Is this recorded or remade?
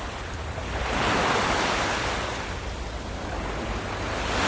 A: recorded